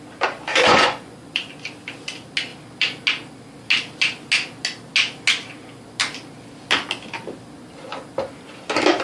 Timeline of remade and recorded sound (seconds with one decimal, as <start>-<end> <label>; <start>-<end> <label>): 0.0-0.5 recorded; 0.5-1.5 remade; 1.5-9.0 recorded